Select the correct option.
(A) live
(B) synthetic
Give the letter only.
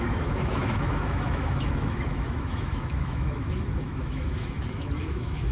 B